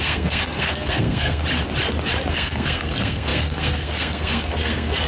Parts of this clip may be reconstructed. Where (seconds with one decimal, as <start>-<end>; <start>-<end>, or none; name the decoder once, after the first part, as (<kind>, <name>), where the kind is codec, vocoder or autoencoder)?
0.0-1.4 (codec, SNAC); 2.3-5.1